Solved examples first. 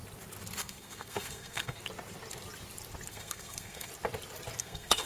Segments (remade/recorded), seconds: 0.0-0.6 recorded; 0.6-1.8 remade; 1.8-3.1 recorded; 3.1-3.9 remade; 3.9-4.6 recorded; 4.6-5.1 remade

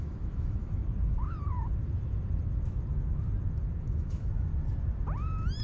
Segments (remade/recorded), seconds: 0.0-0.8 remade; 0.8-3.8 recorded; 3.8-4.5 remade; 4.5-5.6 recorded